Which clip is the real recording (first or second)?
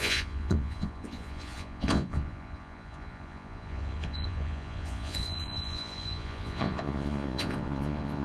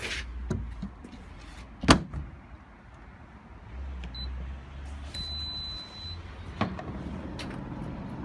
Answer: second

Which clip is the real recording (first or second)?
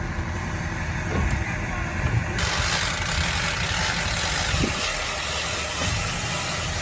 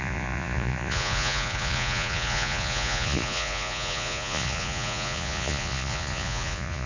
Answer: first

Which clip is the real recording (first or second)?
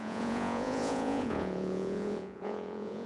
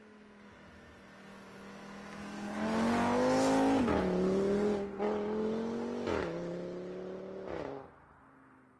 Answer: second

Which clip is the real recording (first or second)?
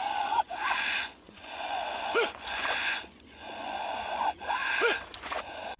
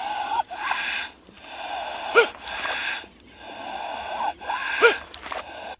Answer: second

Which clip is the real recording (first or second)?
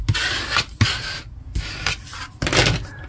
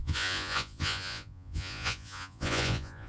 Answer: first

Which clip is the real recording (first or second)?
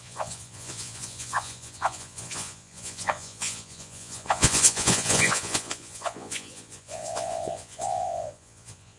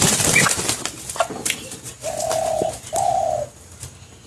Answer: second